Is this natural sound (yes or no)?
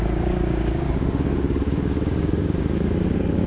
no